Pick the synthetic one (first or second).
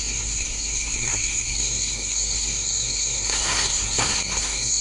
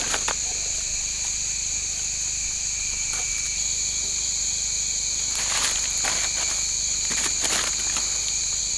first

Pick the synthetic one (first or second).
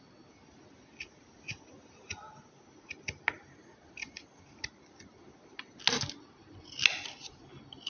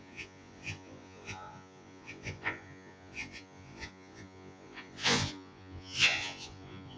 second